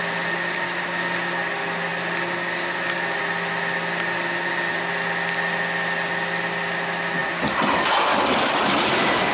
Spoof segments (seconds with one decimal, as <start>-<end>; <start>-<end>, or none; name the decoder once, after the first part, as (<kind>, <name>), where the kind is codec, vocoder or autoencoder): none

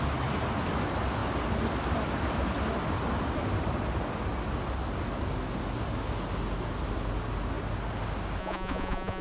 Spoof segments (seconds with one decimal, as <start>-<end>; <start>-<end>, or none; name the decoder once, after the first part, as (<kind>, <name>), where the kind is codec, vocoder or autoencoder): 8.4-9.2 (vocoder, Vocos)